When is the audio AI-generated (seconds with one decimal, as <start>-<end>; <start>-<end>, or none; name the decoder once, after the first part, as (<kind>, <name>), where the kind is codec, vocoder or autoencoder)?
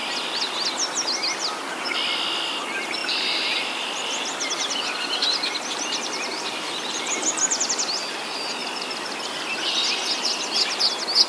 6.3-7.7 (vocoder, BigVGAN v2); 8.6-9.2